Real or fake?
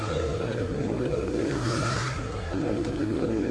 fake